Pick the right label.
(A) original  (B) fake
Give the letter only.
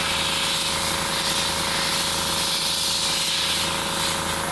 A